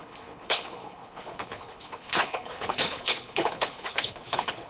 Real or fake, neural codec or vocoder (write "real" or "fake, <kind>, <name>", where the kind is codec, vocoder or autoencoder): fake, codec, HILCodec